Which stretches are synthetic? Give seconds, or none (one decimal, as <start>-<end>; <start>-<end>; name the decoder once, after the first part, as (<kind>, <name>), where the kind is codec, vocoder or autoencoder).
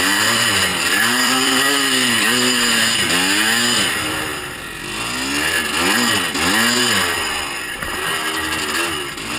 0.7-1.5 (vocoder, BigVGAN v2)